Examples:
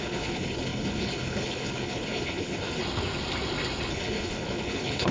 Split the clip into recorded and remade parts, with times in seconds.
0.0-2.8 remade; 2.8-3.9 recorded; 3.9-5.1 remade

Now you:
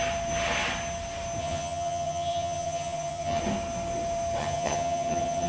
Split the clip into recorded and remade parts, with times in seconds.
0.0-1.4 recorded; 1.4-3.4 remade; 3.4-4.4 recorded; 4.4-5.5 remade

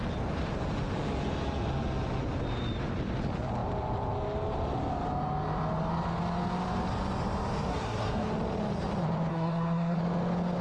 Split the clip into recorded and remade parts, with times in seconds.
0.0-7.7 recorded; 7.7-8.3 remade; 8.3-9.3 recorded; 9.3-10.0 remade; 10.0-10.6 recorded

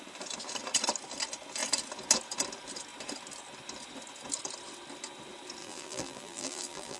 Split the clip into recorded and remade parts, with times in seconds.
0.0-5.6 recorded; 5.6-7.0 remade

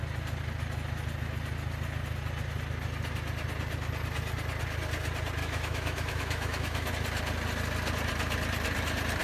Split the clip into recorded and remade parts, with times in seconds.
0.0-5.4 recorded; 5.4-6.9 remade; 6.9-9.2 recorded